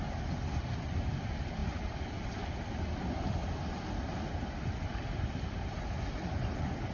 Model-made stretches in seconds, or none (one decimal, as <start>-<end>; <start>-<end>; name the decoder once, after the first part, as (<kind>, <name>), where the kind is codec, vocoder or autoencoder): none